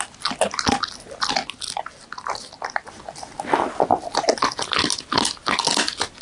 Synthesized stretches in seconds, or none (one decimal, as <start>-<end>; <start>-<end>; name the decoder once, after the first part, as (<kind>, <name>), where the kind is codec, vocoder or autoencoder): none